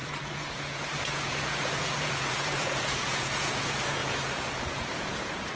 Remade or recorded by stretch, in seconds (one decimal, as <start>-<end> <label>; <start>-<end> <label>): 0.0-5.6 remade